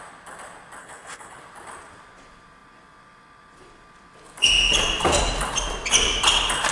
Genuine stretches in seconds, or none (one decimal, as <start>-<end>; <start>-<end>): 0.0-0.8; 1.4-6.7